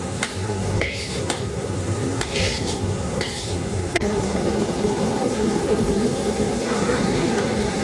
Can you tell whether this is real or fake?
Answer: fake